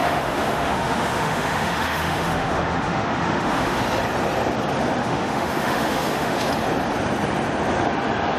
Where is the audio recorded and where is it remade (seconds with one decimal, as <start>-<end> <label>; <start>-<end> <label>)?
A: 0.0-3.8 remade; 3.8-5.0 recorded; 5.0-6.5 remade; 6.5-8.4 recorded